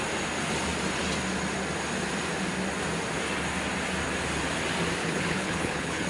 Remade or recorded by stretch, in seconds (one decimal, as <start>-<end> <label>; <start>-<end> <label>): 0.0-5.0 recorded; 5.0-6.1 remade